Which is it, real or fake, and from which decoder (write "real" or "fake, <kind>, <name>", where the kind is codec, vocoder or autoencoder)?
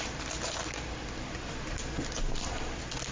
real